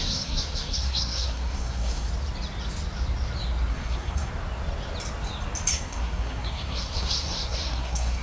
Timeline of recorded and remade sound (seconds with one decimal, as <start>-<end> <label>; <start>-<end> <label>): 0.0-2.1 remade; 2.1-3.7 recorded; 3.7-4.3 remade; 4.3-5.7 recorded; 5.7-8.2 remade